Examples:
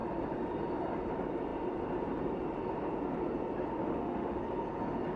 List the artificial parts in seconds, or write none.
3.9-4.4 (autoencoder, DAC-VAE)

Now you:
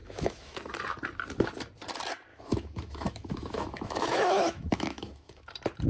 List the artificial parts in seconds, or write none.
0.0-0.7 (autoencoder, DAC-VAE); 2.3-5.5

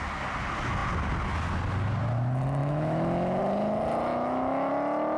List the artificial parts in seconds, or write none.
2.6-3.4 (autoencoder, DAC-VAE); 4.1-4.7

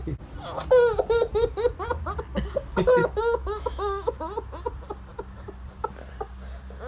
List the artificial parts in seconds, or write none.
3.0-4.2 (autoencoder, DAC-VAE)

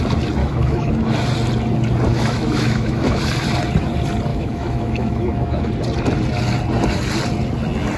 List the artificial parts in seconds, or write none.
0.4-0.9 (autoencoder, DAC-VAE); 2.1-3.2; 4.3-5.7

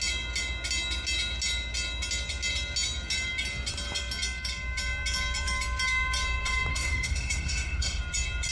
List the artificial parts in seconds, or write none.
6.7-8.0 (autoencoder, DAC-VAE)